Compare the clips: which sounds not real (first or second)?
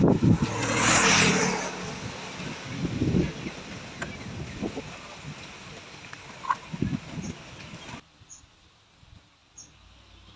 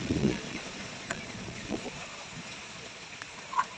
second